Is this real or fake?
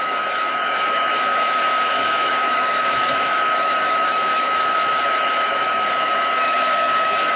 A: fake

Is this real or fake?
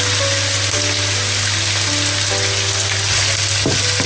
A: real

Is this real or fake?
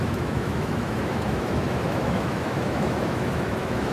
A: fake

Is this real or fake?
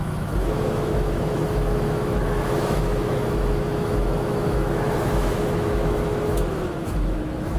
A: fake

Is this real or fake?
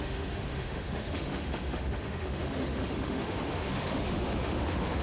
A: fake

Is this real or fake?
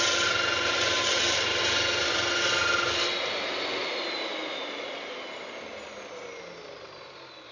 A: real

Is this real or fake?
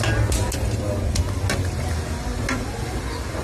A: real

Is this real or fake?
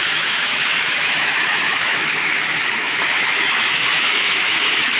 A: fake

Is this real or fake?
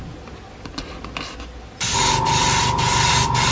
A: real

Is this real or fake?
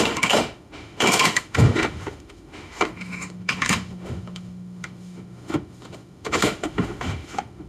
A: fake